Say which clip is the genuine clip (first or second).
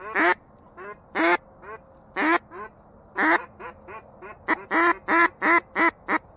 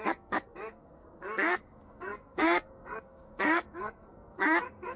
first